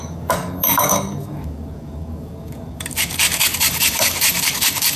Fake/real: fake